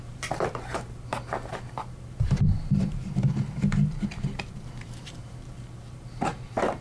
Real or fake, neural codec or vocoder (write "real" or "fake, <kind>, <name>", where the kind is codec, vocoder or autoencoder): fake, vocoder, BigVGAN v2